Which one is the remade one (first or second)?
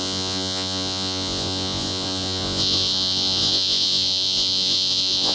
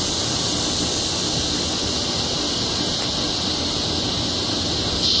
first